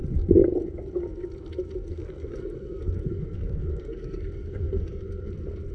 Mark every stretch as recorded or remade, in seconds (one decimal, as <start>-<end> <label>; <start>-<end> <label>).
0.0-1.9 recorded; 1.9-5.3 remade; 5.3-5.7 recorded